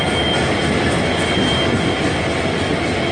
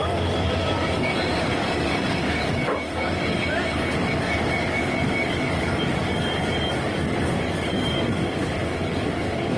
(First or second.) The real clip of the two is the first